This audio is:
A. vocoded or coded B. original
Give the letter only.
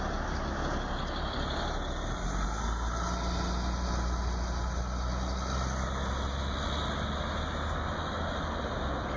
B